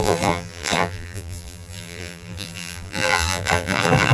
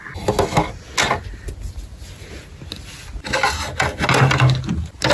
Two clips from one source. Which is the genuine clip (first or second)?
second